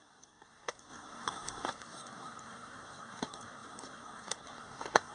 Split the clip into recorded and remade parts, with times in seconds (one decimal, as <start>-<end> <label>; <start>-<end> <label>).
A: 0.0-5.1 remade